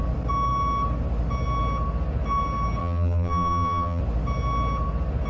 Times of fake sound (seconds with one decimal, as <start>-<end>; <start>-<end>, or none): 2.8-4.0